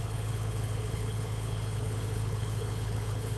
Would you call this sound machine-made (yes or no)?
yes